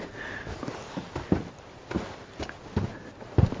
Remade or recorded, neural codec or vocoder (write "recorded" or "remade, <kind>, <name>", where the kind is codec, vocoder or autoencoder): recorded